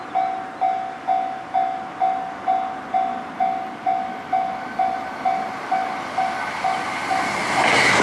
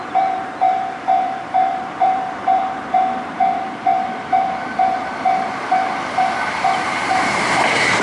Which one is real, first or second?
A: first